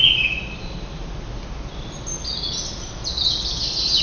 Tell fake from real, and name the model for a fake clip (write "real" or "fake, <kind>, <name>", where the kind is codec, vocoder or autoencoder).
real